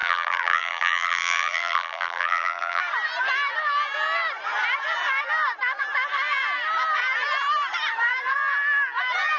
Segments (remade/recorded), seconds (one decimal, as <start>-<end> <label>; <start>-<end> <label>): 0.0-2.8 remade; 2.8-9.4 recorded